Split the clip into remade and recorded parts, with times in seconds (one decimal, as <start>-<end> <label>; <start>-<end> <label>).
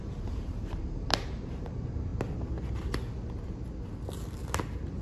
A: 0.0-2.1 remade; 2.1-5.0 recorded